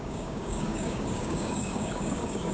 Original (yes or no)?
no